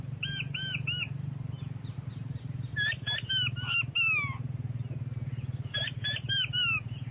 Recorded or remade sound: recorded